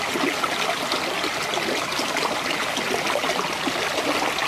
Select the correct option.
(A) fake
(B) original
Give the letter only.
B